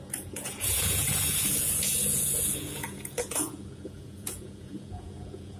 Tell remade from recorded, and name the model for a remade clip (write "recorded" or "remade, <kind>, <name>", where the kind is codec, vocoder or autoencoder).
remade, vocoder, Vocos